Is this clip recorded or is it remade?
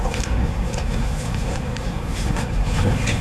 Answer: remade